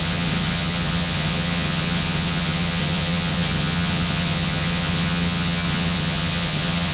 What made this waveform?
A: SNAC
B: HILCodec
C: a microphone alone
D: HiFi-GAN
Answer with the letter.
D